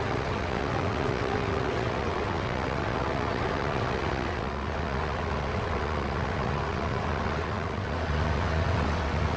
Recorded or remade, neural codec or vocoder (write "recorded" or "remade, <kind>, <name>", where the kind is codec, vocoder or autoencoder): remade, vocoder, WaveNeXt